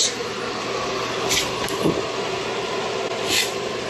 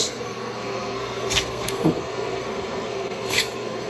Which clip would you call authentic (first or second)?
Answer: first